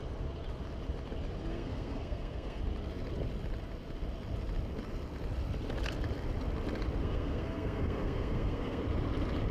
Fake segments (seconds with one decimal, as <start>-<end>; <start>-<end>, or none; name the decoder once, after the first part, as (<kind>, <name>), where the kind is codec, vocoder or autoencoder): 1.5-2.6 (codec, SNAC); 7.0-8.8